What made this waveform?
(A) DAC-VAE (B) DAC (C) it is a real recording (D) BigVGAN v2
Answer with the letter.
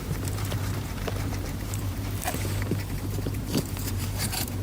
D